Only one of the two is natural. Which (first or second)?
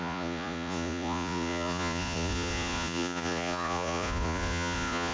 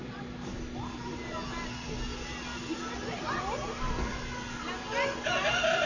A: second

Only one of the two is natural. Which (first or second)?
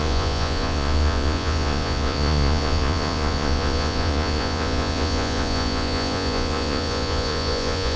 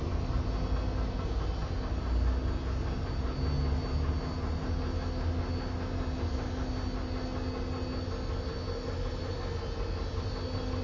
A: second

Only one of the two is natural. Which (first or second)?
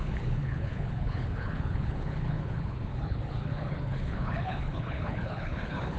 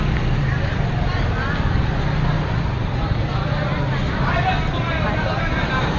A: second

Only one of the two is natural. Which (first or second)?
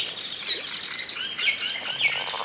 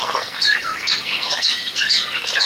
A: first